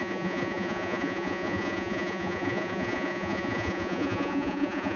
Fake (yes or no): yes